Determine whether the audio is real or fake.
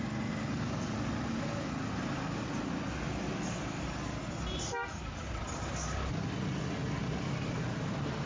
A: real